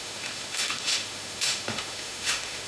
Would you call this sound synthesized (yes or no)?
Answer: yes